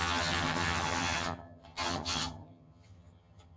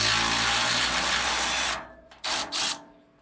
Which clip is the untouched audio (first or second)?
second